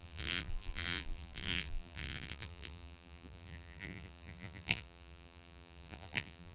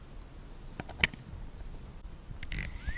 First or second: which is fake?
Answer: first